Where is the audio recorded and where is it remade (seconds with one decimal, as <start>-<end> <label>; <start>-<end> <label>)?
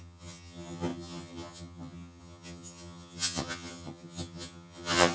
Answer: 0.0-5.1 remade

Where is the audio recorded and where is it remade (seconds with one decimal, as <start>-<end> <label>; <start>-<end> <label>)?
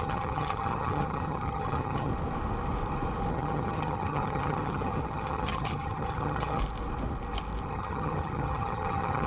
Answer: 0.0-2.1 remade; 2.1-3.3 recorded; 3.3-6.6 remade; 6.6-7.7 recorded; 7.7-9.3 remade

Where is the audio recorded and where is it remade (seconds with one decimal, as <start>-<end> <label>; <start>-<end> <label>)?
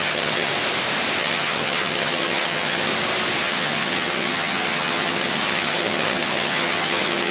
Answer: 0.0-0.5 remade; 0.5-1.2 recorded; 1.2-2.9 remade; 2.9-3.4 recorded; 3.4-7.3 remade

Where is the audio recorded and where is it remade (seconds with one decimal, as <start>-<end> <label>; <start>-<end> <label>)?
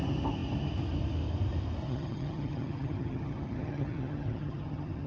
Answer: 0.0-1.8 recorded; 1.8-5.1 remade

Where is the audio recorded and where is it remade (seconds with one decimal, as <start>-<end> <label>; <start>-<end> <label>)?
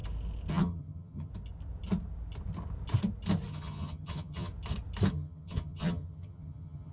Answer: 0.0-0.5 recorded; 0.5-1.3 remade; 1.3-3.5 recorded; 3.5-4.5 remade; 4.5-5.1 recorded; 5.1-6.9 remade